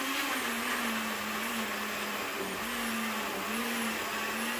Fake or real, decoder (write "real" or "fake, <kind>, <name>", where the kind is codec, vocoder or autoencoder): real